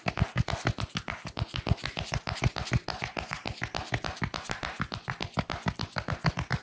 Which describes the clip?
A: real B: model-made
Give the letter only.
A